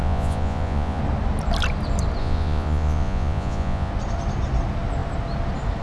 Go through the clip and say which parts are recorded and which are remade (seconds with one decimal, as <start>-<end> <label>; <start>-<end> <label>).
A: 0.0-1.0 remade; 1.0-2.2 recorded; 2.2-3.9 remade; 3.9-5.8 recorded